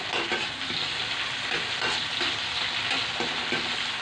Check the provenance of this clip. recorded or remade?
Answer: recorded